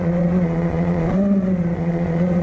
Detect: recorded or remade remade